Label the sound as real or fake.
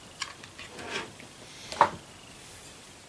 real